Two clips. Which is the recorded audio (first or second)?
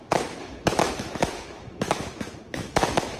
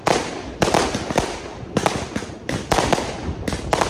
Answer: second